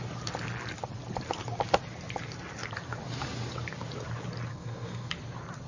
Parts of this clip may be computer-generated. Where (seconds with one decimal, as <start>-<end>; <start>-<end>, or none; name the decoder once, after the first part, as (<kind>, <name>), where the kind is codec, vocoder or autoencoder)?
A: 4.5-5.1 (codec, SNAC)